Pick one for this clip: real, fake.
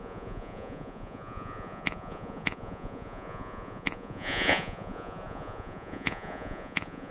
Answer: fake